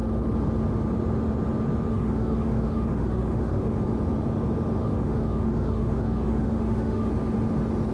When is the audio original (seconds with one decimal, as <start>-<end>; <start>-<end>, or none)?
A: 0.0-1.9; 3.8-4.8; 7.1-7.9